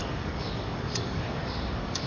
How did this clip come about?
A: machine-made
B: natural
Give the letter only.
A